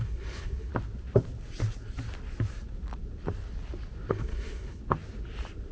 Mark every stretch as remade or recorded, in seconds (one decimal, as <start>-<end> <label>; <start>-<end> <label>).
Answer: 0.0-0.7 remade; 0.7-4.1 recorded; 4.1-4.8 remade; 4.8-5.7 recorded